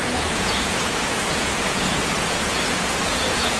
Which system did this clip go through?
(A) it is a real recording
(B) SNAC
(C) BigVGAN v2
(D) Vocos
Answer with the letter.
D